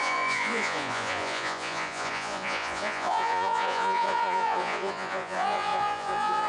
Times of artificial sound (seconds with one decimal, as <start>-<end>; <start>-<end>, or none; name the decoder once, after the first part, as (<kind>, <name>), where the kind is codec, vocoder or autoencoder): 0.0-6.5 (vocoder, Vocos)